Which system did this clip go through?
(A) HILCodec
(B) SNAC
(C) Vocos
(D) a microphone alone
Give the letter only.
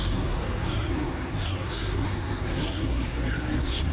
B